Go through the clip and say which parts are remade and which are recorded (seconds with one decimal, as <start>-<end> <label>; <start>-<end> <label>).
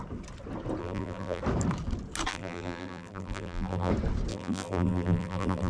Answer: 0.0-0.8 recorded; 0.8-1.4 remade; 1.4-2.3 recorded; 2.3-3.9 remade; 3.9-4.3 recorded; 4.3-5.7 remade